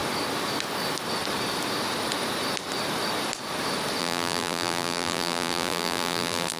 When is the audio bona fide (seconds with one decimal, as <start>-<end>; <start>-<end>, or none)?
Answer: 0.0-4.0